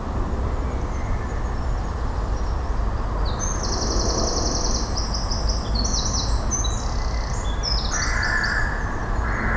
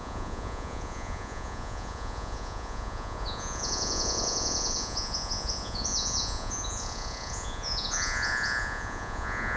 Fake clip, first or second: second